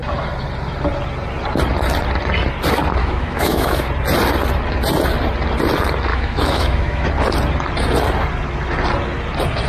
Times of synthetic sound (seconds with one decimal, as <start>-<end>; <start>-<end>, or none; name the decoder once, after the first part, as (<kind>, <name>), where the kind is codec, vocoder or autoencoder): 3.0-3.9 (autoencoder, DAC-VAE); 6.1-7.1